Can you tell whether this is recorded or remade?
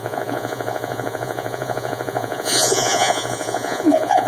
remade